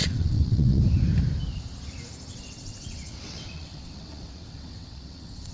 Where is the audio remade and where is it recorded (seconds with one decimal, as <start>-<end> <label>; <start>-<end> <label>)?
0.0-0.8 remade; 0.8-2.3 recorded; 2.3-5.5 remade